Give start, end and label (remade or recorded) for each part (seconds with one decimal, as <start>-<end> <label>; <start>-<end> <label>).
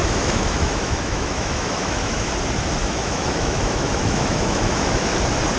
0.0-2.3 remade; 2.3-2.8 recorded; 2.8-5.1 remade; 5.1-5.6 recorded